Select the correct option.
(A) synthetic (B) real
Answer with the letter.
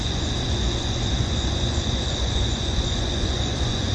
A